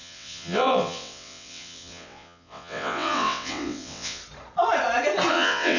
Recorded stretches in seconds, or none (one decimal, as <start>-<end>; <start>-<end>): 4.2-5.3